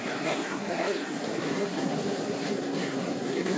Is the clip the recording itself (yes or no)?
no